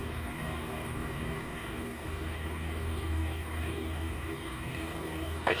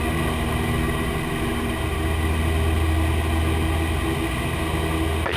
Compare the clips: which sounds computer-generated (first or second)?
first